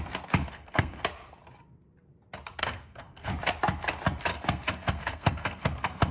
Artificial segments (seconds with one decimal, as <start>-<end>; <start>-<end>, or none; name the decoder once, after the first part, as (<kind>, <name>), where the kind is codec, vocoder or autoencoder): 0.4-1.0 (codec, SNAC); 2.6-3.3; 4.3-6.1